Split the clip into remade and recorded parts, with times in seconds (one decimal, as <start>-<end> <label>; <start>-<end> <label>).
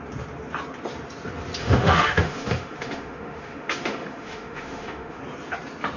0.0-1.6 recorded; 1.6-5.2 remade; 5.2-6.0 recorded